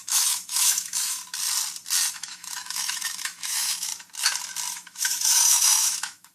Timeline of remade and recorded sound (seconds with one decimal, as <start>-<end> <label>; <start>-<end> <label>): 0.0-1.2 remade; 1.2-2.1 recorded; 2.1-3.9 remade; 3.9-4.7 recorded; 4.7-6.3 remade